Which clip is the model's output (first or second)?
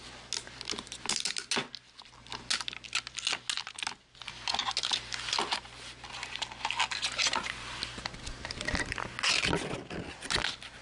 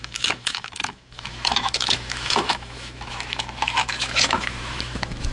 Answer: second